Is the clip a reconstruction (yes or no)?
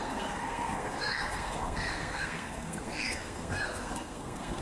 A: yes